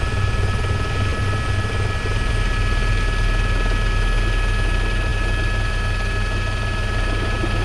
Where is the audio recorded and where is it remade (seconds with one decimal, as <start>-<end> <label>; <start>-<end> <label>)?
0.0-7.6 recorded